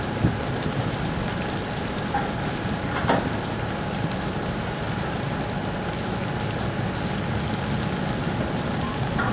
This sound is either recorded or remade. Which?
recorded